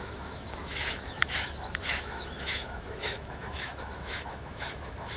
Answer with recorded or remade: remade